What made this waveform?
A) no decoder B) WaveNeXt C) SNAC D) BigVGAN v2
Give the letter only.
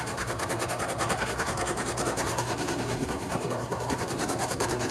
C